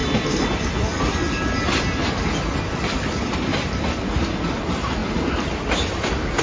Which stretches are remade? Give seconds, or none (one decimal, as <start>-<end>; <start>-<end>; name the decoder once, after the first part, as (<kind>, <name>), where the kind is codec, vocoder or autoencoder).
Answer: 2.8-3.5 (vocoder, BigVGAN v2); 4.4-6.4